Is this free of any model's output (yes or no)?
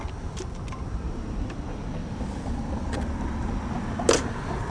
yes